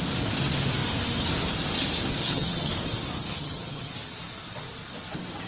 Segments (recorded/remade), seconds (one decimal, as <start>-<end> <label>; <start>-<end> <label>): 0.0-2.2 recorded; 2.2-2.7 remade; 2.7-3.2 recorded; 3.2-3.9 remade; 3.9-5.5 recorded